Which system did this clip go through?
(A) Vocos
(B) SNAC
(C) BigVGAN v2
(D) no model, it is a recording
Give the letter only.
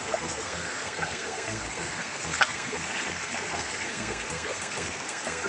B